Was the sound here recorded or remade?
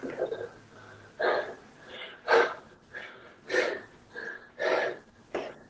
recorded